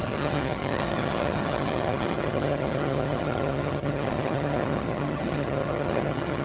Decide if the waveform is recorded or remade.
remade